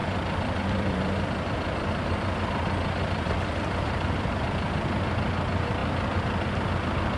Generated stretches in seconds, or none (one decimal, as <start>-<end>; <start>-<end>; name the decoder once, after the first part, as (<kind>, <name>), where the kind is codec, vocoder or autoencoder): 0.0-4.3 (vocoder, BigVGAN v2)